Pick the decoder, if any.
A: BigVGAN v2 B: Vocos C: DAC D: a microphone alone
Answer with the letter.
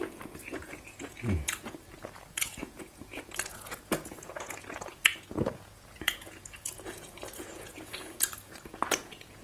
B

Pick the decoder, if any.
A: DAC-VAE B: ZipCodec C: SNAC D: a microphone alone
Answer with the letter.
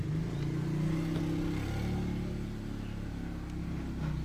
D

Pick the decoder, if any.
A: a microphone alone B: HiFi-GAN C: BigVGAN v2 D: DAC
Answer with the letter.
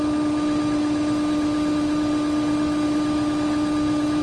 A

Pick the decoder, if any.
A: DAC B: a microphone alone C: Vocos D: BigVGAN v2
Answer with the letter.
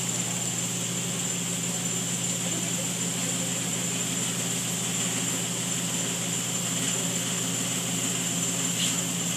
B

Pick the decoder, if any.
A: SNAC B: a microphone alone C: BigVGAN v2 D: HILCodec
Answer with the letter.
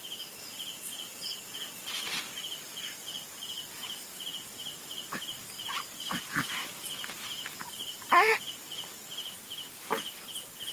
C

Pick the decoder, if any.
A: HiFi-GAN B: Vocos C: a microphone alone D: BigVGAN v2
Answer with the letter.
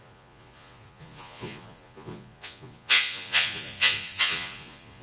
B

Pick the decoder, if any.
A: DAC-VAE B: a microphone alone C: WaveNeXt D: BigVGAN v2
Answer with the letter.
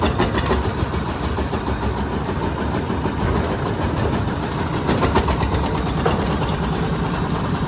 D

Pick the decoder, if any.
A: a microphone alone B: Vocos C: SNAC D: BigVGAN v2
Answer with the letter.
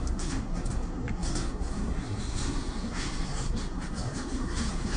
C